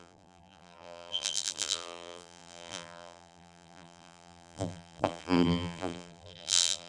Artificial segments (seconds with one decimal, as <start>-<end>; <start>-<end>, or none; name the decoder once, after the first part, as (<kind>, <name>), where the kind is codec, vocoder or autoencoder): 0.0-6.9 (vocoder, BigVGAN v2)